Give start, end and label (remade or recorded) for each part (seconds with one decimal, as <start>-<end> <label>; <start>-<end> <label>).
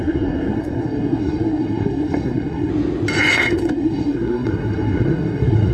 0.0-2.7 remade; 2.7-3.3 recorded; 3.3-5.7 remade